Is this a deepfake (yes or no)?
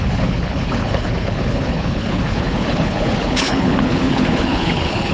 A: yes